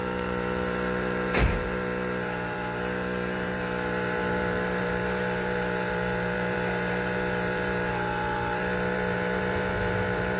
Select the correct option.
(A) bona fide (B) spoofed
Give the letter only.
B